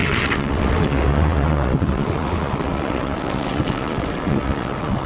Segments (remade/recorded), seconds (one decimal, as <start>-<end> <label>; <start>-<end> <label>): 0.0-5.1 remade